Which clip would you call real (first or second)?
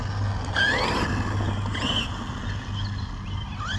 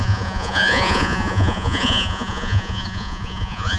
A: first